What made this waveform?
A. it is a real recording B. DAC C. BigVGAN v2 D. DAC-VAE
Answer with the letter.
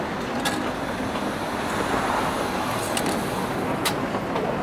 A